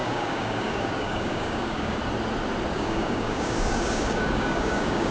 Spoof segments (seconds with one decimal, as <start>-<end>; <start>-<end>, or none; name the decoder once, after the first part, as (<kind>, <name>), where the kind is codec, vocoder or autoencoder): 0.0-2.0 (codec, DAC); 2.7-5.1